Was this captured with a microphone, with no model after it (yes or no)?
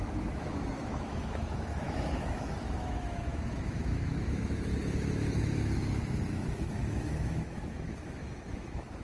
no